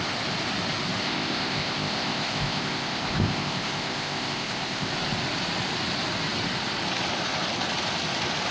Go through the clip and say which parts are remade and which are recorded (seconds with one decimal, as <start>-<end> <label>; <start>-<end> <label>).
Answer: 0.0-1.0 recorded; 1.0-4.9 remade; 4.9-8.5 recorded